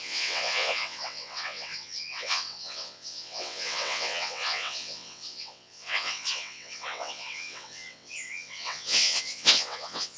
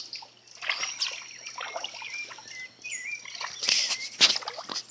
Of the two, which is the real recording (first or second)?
second